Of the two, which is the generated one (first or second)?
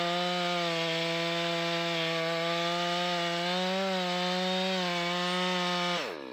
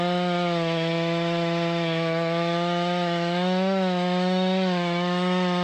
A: second